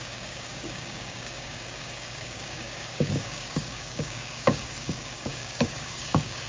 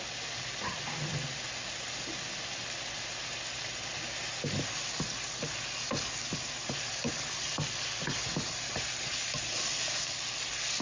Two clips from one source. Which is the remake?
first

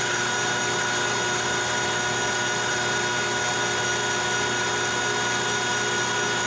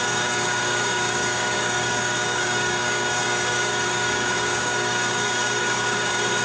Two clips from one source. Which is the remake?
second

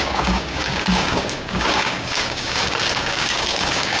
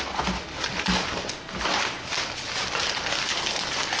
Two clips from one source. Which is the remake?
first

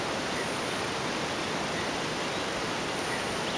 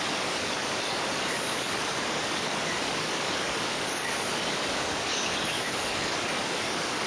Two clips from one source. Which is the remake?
second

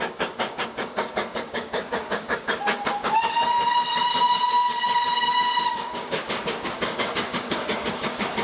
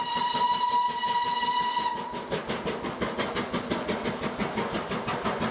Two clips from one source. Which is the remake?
first